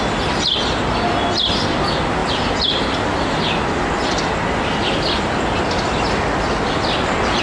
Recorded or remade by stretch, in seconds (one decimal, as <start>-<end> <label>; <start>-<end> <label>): 0.0-7.4 recorded